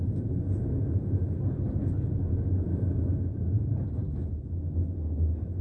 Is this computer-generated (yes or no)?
no